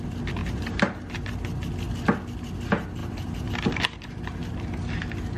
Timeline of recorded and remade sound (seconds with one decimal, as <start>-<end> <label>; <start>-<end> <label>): 0.0-0.4 recorded; 0.4-1.1 remade; 1.1-3.0 recorded; 3.0-3.5 remade; 3.5-4.4 recorded; 4.4-5.4 remade